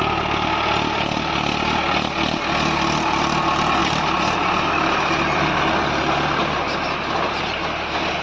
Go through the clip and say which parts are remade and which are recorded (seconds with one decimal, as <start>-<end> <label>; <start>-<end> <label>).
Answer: 0.0-3.8 recorded; 3.8-7.4 remade; 7.4-8.2 recorded